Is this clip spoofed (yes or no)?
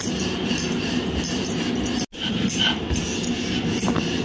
no